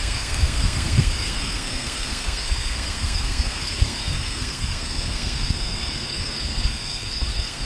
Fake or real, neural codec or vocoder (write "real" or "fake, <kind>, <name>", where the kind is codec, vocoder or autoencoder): fake, codec, SNAC